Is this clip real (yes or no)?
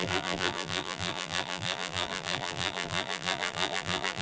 no